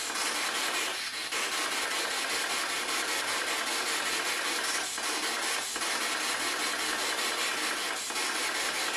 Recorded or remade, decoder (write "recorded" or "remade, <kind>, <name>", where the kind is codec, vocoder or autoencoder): recorded